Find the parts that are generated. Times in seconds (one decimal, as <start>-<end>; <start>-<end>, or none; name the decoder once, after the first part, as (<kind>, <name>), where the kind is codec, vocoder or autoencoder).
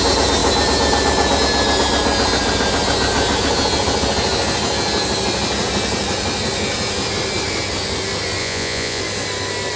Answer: 8.4-9.0 (vocoder, Vocos)